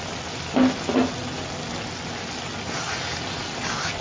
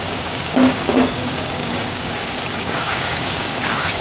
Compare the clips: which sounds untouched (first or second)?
first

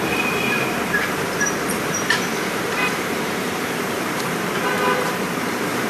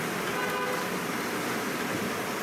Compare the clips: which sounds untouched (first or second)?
second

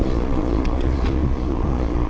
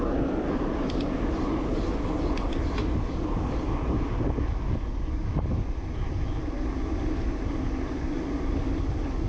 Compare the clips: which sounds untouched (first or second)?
second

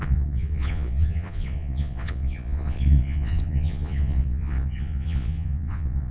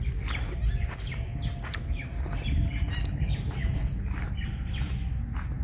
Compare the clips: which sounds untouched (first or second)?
second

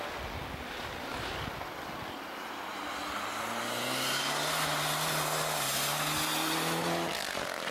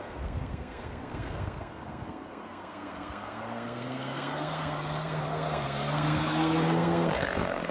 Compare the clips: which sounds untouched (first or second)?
first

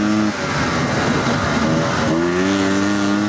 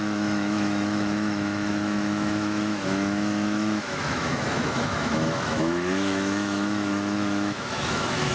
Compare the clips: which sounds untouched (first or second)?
first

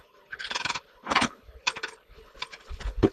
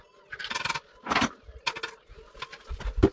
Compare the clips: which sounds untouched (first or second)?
second